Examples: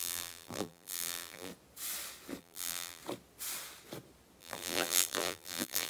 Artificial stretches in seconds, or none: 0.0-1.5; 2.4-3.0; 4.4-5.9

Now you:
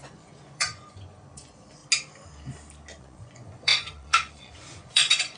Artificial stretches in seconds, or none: 0.0-1.8; 3.0-5.4

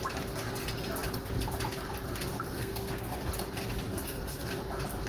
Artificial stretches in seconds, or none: 2.3-3.3; 3.9-4.6

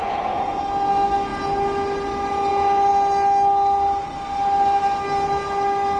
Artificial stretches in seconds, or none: 0.0-0.6

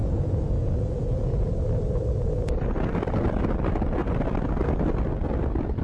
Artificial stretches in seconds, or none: 0.0-1.5

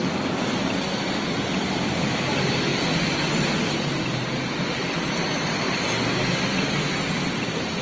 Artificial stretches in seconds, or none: none

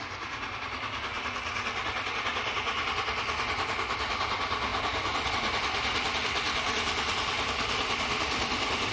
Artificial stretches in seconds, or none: none